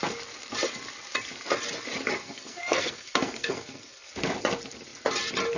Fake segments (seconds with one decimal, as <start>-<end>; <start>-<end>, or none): 2.2-4.1